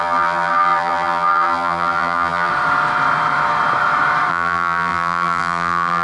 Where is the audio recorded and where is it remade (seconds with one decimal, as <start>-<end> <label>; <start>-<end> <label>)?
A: 0.0-2.5 remade; 2.5-4.3 recorded; 4.3-6.0 remade